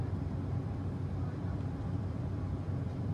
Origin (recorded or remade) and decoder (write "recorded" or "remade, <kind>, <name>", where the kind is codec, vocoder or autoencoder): remade, vocoder, BigVGAN v2